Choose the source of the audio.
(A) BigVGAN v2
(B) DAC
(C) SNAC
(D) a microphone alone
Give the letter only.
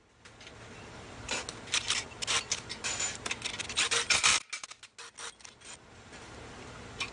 D